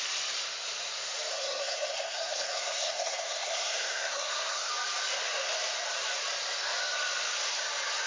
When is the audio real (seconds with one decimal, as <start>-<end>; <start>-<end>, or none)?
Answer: 0.0-1.3; 4.7-8.1